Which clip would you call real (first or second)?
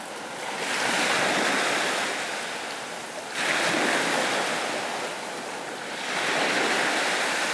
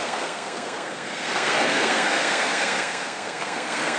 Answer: first